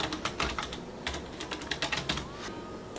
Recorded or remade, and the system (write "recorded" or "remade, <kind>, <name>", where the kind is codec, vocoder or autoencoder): recorded